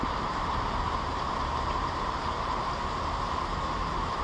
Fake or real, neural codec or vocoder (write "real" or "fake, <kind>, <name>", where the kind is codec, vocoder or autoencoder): fake, vocoder, BigVGAN v2